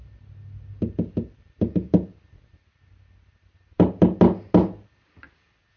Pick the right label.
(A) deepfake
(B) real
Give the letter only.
B